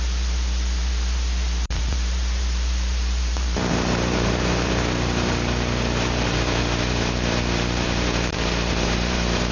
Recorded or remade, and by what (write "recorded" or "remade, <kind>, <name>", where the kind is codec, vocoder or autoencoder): remade, vocoder, BigVGAN v2